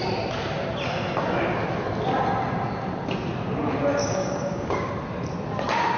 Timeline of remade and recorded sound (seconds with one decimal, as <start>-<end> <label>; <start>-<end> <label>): 0.0-4.0 recorded; 4.0-4.9 remade; 4.9-6.0 recorded